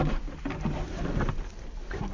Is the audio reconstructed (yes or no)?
yes